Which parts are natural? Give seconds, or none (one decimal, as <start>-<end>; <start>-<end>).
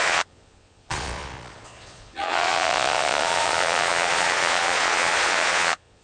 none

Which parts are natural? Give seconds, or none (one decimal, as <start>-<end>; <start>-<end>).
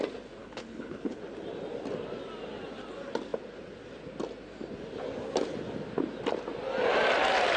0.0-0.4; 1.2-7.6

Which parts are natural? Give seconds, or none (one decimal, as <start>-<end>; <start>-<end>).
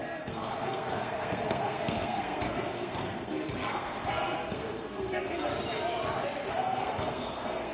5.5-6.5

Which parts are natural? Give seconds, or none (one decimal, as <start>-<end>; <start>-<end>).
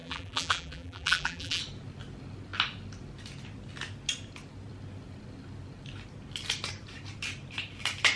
1.6-8.2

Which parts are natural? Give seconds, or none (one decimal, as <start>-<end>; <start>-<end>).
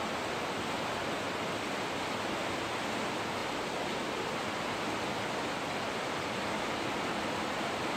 0.0-8.0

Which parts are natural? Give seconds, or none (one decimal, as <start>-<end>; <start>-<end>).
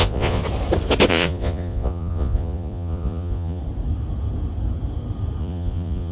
0.4-1.1; 3.6-5.4